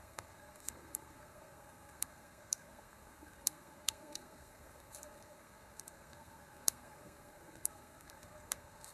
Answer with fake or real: fake